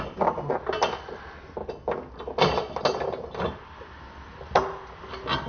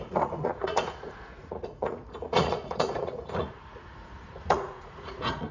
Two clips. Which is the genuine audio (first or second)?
first